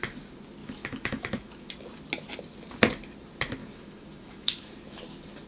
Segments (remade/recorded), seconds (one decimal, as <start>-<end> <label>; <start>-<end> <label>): 0.0-0.6 recorded; 0.6-1.7 remade; 1.7-3.6 recorded; 3.6-4.7 remade; 4.7-5.5 recorded